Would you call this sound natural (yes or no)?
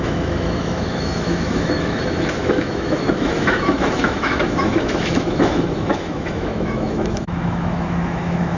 no